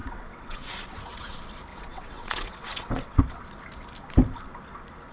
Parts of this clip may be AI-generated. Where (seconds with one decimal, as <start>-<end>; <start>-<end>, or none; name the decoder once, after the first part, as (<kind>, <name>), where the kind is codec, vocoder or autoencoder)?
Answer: 0.0-1.2 (vocoder, WaveNeXt); 1.7-3.2